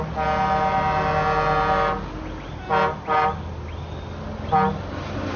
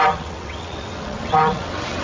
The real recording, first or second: first